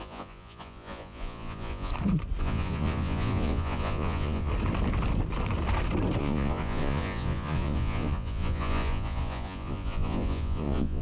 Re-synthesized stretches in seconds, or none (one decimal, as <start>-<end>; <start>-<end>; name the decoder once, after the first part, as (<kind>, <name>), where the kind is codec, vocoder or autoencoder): 0.0-1.9 (vocoder, Vocos); 2.4-4.5; 6.2-11.0